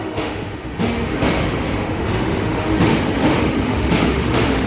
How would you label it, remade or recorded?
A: remade